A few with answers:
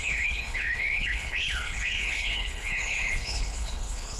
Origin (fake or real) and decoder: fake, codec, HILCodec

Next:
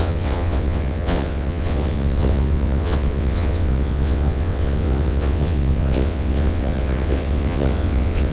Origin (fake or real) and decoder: fake, vocoder, WaveNeXt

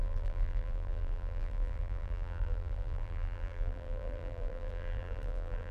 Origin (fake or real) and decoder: fake, vocoder, BigVGAN v2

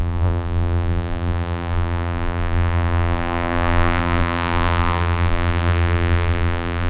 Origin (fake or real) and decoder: fake, vocoder, BigVGAN v2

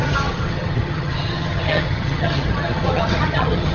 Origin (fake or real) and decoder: fake, vocoder, HiFi-GAN